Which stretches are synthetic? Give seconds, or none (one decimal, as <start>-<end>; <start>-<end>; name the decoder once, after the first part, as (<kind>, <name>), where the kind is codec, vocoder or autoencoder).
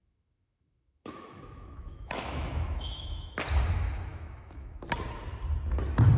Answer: 0.0-3.3 (autoencoder, DAC-VAE); 4.1-4.8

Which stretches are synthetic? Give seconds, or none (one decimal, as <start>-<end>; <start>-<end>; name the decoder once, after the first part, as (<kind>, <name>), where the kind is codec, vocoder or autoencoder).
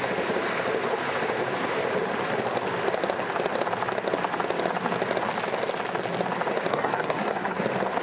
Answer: 6.7-7.6 (codec, SNAC)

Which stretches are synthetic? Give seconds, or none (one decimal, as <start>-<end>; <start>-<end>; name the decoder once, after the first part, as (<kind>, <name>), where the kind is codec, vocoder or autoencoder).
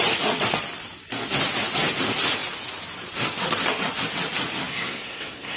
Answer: 4.7-5.6 (codec, SNAC)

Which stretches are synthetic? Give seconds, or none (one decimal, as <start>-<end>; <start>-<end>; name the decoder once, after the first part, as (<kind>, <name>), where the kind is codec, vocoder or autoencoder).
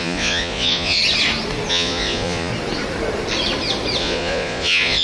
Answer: 0.0-1.0 (vocoder, Vocos); 1.7-2.5; 4.0-5.0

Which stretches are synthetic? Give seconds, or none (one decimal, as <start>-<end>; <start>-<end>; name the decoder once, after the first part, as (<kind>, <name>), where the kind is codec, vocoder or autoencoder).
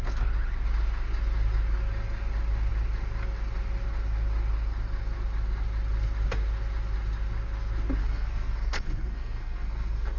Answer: 8.0-10.2 (codec, SNAC)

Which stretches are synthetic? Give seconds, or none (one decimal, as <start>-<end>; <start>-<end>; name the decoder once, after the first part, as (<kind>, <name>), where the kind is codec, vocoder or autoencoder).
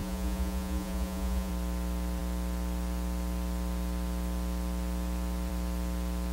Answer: 0.0-1.5 (vocoder, Vocos)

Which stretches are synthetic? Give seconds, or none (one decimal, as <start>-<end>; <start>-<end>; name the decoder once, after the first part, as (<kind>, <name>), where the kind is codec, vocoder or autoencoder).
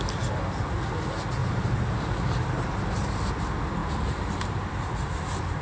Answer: 1.4-3.1 (vocoder, BigVGAN v2); 3.8-5.1